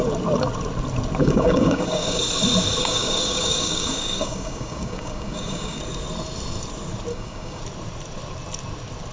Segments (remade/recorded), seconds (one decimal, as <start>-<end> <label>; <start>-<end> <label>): 0.0-1.2 recorded; 1.2-2.2 remade; 2.2-2.8 recorded; 2.8-5.8 remade; 5.8-7.1 recorded; 7.1-7.6 remade; 7.6-9.1 recorded